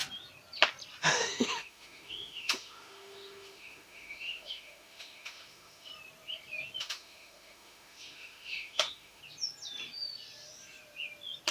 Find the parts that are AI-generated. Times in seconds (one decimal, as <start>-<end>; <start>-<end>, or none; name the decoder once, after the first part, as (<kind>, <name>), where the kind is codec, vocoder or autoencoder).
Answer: 1.0-5.9 (autoencoder, DAC-VAE); 6.8-9.2